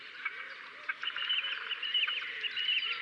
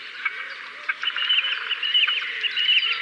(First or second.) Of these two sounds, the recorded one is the second